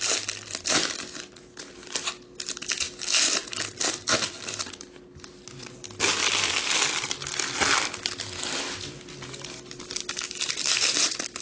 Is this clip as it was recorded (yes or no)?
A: yes